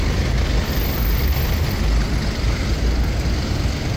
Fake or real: real